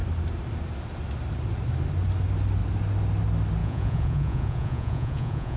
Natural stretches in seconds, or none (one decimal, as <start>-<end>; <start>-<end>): 0.0-3.6